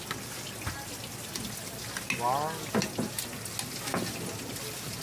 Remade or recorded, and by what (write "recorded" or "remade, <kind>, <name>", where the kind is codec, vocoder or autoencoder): recorded